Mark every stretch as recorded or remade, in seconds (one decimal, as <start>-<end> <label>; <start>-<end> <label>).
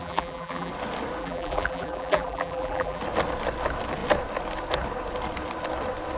0.0-0.7 remade; 0.7-1.2 recorded; 1.2-3.0 remade; 3.0-6.2 recorded